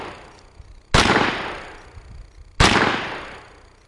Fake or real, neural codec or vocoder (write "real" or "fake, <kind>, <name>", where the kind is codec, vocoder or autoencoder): real